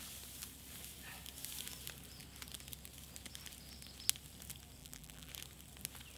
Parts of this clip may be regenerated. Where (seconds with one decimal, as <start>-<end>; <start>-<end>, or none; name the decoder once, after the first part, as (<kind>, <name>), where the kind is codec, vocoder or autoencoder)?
4.8-5.3 (vocoder, BigVGAN v2)